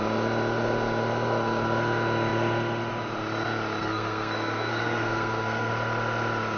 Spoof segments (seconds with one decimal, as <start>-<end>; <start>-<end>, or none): 3.8-5.7